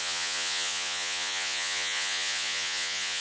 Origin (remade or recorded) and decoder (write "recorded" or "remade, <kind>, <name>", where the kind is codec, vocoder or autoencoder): remade, vocoder, Vocos